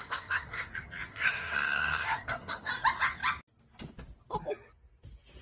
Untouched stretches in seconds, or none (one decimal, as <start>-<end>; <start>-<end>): 0.7-1.1; 2.7-5.4

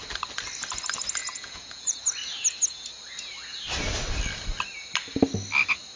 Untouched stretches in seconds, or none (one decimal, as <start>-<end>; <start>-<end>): 0.0-1.2; 2.0-6.0